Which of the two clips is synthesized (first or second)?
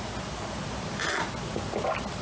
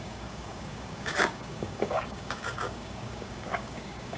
second